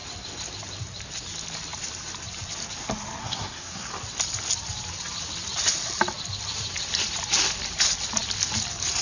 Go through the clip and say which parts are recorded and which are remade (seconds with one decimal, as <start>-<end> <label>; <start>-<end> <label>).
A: 0.0-3.2 recorded; 3.2-3.9 remade; 3.9-9.0 recorded